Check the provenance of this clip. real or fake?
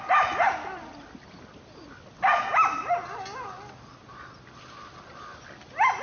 real